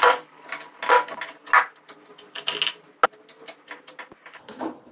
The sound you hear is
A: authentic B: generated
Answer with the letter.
A